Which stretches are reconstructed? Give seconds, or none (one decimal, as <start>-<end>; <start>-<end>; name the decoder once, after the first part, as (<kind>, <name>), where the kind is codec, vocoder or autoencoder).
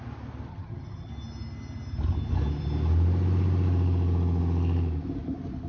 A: 0.5-1.1 (vocoder, HiFi-GAN)